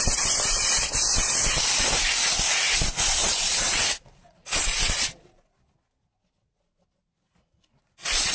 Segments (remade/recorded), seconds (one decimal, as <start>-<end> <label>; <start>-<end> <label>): 0.0-3.2 recorded; 3.2-4.5 remade; 4.5-8.3 recorded

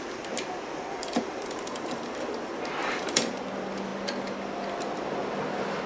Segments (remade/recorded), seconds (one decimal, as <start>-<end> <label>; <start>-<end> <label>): 0.0-1.0 recorded; 1.0-2.5 remade; 2.5-2.9 recorded; 2.9-3.4 remade; 3.4-5.9 recorded

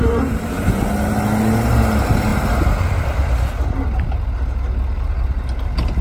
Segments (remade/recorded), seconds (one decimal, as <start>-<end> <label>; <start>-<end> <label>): 0.0-6.0 recorded

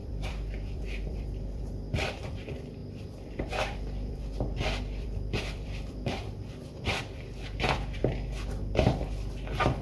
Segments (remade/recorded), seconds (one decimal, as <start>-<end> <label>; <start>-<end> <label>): 0.0-2.1 remade; 2.1-2.8 recorded; 2.8-7.0 remade; 7.0-9.8 recorded

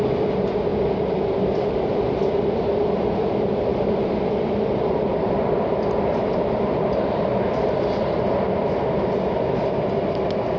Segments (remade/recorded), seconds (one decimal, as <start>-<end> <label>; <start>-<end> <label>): 0.0-3.7 recorded; 3.7-8.0 remade; 8.0-10.6 recorded

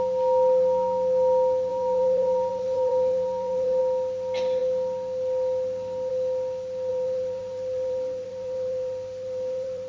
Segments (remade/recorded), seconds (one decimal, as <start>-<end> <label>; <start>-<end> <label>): 0.0-1.7 recorded; 1.7-3.8 remade; 3.8-6.9 recorded; 6.9-9.9 remade

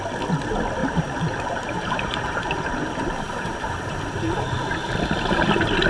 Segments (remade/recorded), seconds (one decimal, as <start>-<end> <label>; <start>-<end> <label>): 0.0-0.8 recorded; 0.8-4.3 remade; 4.3-5.9 recorded

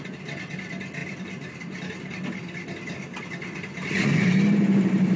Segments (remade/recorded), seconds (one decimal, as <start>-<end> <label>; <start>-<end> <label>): 0.0-1.0 recorded; 1.0-1.8 remade; 1.8-5.2 recorded